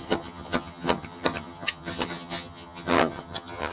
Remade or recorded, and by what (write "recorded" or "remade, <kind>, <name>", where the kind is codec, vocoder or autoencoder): remade, vocoder, HiFi-GAN